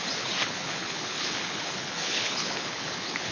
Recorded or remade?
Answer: remade